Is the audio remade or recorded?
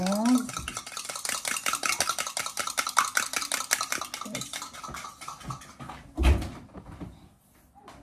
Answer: recorded